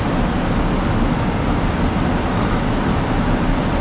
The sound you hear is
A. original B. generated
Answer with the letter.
A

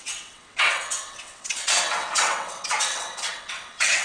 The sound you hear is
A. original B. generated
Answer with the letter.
B